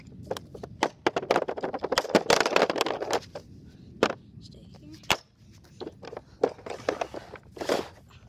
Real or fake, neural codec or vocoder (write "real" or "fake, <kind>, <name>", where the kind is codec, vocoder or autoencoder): real